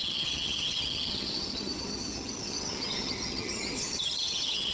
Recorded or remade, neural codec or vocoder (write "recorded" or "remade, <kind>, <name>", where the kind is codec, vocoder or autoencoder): remade, vocoder, HiFi-GAN